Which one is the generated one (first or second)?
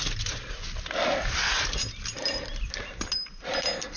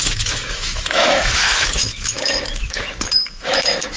second